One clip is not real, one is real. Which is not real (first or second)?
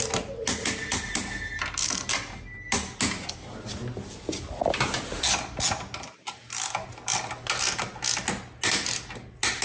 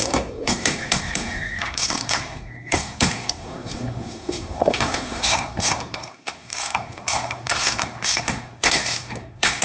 second